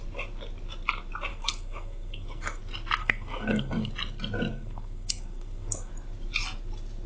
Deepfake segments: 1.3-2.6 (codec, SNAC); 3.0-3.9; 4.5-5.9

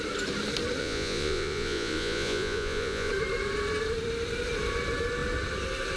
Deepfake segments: 0.8-3.1 (vocoder, Vocos)

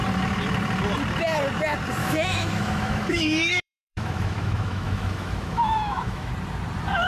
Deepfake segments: 2.0-6.3 (autoencoder, DAC-VAE)

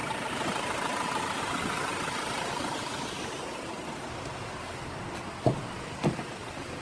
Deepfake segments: none

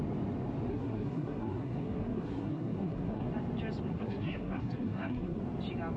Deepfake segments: 0.7-3.3 (codec, SNAC); 3.9-5.4